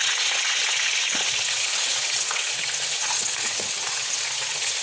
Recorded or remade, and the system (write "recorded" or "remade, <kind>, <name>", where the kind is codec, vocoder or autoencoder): remade, vocoder, WaveNeXt